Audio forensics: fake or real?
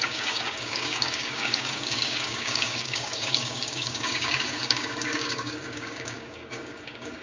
fake